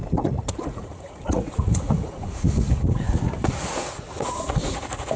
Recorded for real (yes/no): no